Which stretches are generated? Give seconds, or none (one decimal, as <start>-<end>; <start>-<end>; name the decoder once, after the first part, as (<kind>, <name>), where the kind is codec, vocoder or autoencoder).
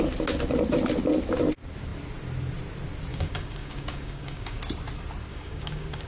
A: 3.1-4.6 (codec, DAC); 5.3-6.1